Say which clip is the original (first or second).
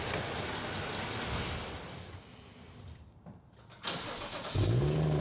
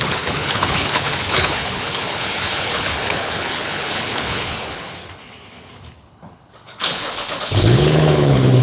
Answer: first